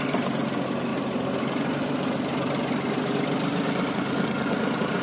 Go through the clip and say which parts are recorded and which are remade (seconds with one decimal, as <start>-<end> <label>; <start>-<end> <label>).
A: 0.0-5.0 recorded

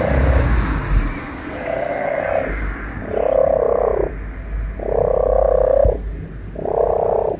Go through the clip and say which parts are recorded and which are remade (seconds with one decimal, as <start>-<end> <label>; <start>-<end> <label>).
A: 0.0-1.2 recorded; 1.2-2.2 remade; 2.2-7.4 recorded

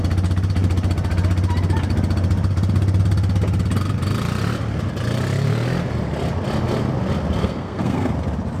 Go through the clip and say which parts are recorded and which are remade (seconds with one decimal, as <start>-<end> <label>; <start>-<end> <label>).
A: 0.0-7.4 recorded; 7.4-8.1 remade; 8.1-8.6 recorded

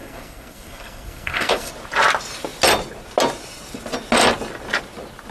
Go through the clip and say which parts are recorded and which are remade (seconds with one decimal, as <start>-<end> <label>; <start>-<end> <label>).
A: 0.0-1.7 remade; 1.7-5.3 recorded

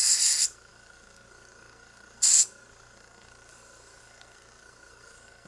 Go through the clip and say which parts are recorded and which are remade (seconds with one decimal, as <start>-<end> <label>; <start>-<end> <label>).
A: 0.0-5.5 remade

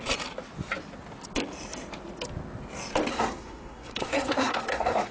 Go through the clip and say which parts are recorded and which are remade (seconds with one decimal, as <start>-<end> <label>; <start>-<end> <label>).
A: 0.0-3.1 recorded; 3.1-5.1 remade

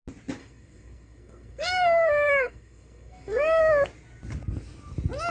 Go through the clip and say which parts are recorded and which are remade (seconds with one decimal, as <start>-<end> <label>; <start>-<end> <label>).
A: 0.0-0.4 recorded; 0.4-3.6 remade; 3.6-5.3 recorded

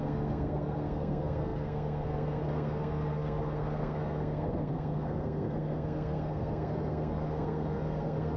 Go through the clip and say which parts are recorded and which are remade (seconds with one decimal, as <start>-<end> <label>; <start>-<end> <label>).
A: 0.0-8.4 remade